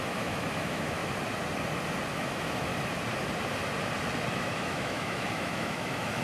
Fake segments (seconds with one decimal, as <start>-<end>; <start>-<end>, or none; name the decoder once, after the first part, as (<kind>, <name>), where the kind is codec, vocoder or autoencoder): 0.0-1.0 (autoencoder, DAC-VAE); 2.1-2.7; 4.3-6.2